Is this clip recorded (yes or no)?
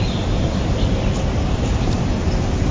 no